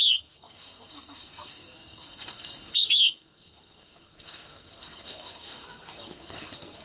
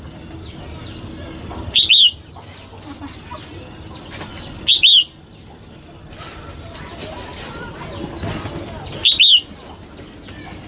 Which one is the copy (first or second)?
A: first